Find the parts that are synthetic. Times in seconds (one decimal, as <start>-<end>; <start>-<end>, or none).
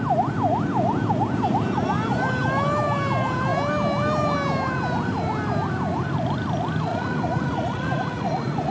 6.9-8.7